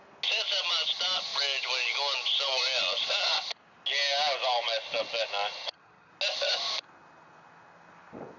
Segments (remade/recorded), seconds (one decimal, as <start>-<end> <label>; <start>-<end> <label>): 0.0-5.6 recorded; 5.6-6.1 remade; 6.1-8.4 recorded